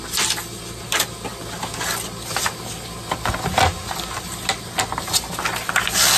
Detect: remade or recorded recorded